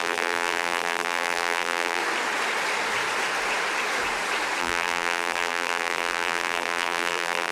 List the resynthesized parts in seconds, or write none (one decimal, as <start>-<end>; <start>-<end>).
0.0-2.0; 4.6-7.5